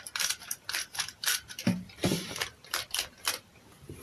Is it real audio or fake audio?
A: fake